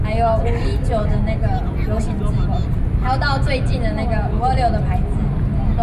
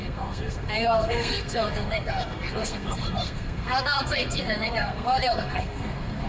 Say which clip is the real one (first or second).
first